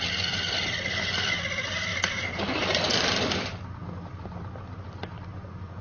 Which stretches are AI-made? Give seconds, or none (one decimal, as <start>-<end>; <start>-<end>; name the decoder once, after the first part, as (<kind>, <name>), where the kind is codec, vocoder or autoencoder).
3.8-4.3 (vocoder, BigVGAN v2)